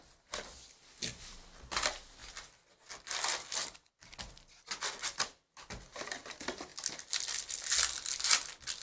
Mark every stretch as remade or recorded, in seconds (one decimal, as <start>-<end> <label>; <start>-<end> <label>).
0.0-8.8 recorded